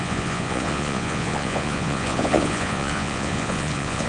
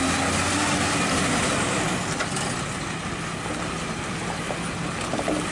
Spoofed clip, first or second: first